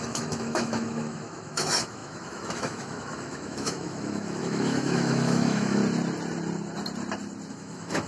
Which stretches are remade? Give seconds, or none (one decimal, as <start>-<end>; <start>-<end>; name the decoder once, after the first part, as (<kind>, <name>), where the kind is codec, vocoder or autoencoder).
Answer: 0.0-5.8 (autoencoder, DAC-VAE); 7.5-8.1